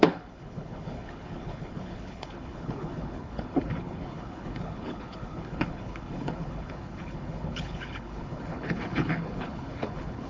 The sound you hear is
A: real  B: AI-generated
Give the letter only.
B